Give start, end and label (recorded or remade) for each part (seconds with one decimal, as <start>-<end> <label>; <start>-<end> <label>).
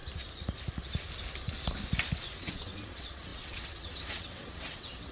0.0-2.2 recorded; 2.2-5.1 remade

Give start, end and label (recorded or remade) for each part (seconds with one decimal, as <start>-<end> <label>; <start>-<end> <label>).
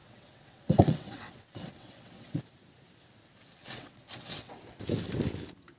0.0-2.4 remade; 2.4-3.5 recorded; 3.5-4.6 remade; 4.6-5.8 recorded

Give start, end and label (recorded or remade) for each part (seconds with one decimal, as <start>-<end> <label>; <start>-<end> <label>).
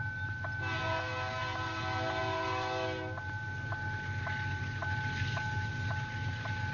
0.0-6.7 recorded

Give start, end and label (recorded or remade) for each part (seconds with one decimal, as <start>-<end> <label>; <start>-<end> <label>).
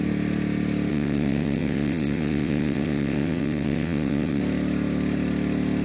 0.0-0.9 recorded; 0.9-4.4 remade; 4.4-5.8 recorded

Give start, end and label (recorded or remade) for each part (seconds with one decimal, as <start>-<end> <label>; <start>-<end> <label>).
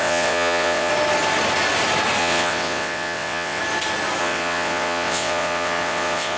0.0-0.9 remade; 0.9-2.2 recorded; 2.2-3.6 remade; 3.6-4.2 recorded; 4.2-6.4 remade